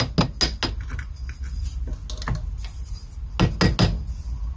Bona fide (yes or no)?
yes